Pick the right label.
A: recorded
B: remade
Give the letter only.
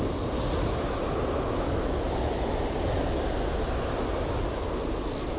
A